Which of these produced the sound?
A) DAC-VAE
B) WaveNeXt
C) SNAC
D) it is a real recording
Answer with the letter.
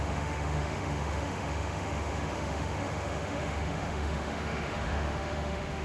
A